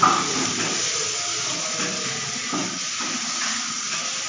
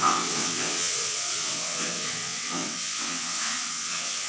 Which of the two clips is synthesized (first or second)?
second